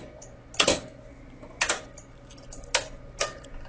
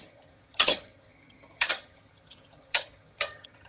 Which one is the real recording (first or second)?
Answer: first